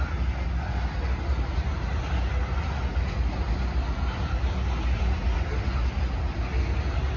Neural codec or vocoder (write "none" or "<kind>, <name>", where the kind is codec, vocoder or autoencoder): none